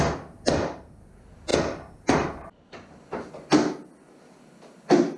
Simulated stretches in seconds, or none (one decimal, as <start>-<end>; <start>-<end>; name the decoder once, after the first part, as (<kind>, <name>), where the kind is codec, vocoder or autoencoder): none